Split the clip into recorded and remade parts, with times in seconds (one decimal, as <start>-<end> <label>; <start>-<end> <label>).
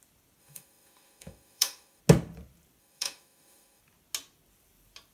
0.0-0.4 recorded; 0.4-2.0 remade; 2.0-2.8 recorded; 2.8-3.8 remade; 3.8-5.1 recorded